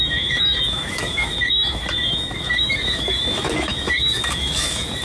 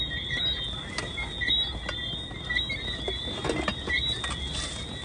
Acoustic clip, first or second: second